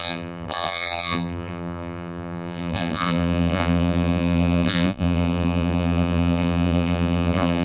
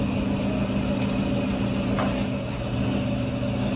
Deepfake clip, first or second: first